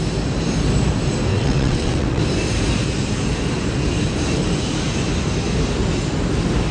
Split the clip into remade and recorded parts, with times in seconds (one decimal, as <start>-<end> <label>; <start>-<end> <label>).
0.0-1.3 recorded; 1.3-2.2 remade; 2.2-6.7 recorded

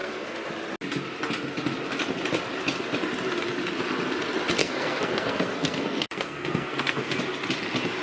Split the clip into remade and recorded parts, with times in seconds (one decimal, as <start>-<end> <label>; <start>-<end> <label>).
0.0-0.5 remade; 0.5-4.6 recorded; 4.6-7.2 remade; 7.2-8.0 recorded

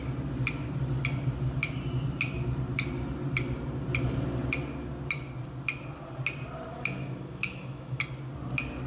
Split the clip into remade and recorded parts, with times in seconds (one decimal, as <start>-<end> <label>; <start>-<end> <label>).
0.0-6.7 recorded; 6.7-8.0 remade; 8.0-8.9 recorded

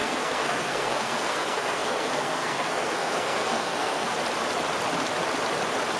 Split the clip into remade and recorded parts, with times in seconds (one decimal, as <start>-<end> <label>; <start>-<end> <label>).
0.0-4.1 remade; 4.1-6.0 recorded

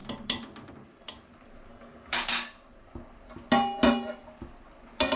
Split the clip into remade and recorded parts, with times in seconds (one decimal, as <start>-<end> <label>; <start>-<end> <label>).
0.0-1.7 recorded; 1.7-2.3 remade; 2.3-5.2 recorded

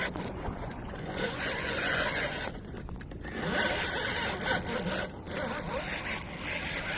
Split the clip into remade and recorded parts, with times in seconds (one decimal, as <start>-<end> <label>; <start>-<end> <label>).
0.0-3.0 remade; 3.0-7.0 recorded

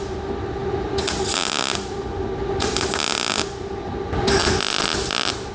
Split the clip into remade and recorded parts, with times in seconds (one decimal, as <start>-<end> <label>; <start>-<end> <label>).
0.0-5.5 recorded

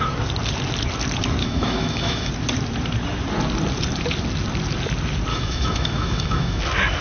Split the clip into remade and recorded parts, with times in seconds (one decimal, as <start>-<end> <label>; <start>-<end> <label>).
0.0-1.4 recorded; 1.4-2.3 remade; 2.3-5.3 recorded; 5.3-6.6 remade; 6.6-7.0 recorded